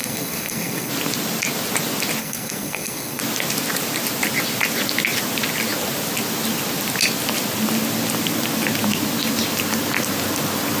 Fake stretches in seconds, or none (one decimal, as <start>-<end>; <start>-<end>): 0.0-0.9; 2.2-3.2